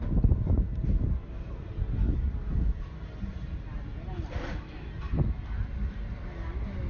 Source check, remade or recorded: recorded